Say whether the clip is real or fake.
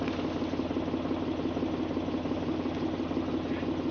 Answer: real